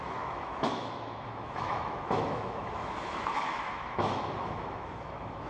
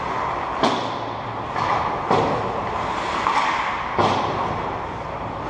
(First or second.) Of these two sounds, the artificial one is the first